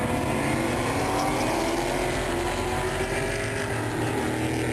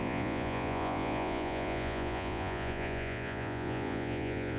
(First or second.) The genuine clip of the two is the first